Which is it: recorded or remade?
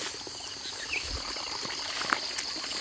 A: recorded